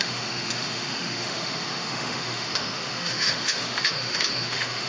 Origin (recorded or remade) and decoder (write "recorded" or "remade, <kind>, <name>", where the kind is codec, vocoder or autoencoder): remade, autoencoder, DAC-VAE